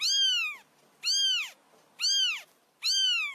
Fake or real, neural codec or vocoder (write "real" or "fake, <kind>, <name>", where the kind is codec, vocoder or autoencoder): real